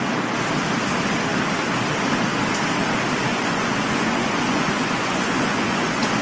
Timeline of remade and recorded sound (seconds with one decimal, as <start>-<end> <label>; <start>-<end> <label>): 0.0-3.3 recorded; 3.3-6.2 remade